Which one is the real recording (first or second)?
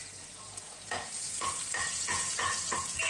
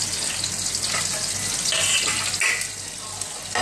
second